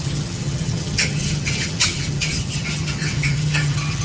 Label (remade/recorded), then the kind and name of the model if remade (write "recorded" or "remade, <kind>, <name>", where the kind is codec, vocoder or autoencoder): remade, vocoder, HiFi-GAN